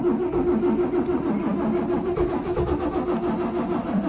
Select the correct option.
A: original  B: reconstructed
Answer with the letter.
A